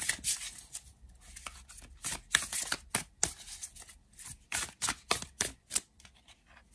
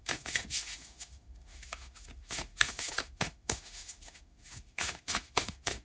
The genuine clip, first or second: first